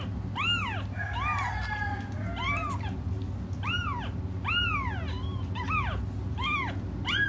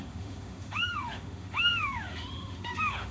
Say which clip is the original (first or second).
first